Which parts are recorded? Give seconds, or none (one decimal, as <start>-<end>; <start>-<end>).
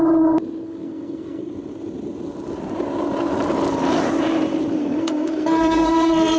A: 0.0-0.6; 1.5-4.8